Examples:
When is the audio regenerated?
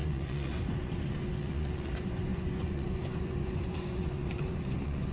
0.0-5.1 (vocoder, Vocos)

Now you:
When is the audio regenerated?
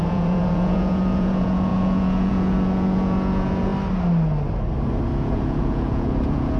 0.0-3.7 (vocoder, Vocos); 5.1-6.6